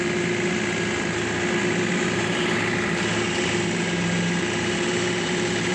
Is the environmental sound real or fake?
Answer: real